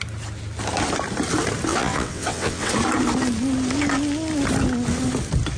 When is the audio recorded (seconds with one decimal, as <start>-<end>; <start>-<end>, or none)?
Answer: 0.0-1.7; 2.7-5.6